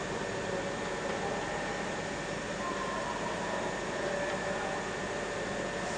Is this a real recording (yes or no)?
yes